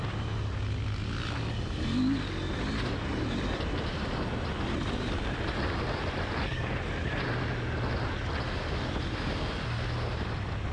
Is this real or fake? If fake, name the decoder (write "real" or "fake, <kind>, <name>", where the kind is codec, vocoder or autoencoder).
real